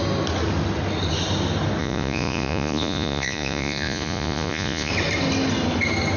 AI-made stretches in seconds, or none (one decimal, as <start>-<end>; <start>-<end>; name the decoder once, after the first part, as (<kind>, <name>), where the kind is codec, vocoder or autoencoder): 1.8-4.9 (vocoder, Vocos)